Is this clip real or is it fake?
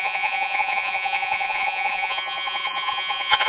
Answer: fake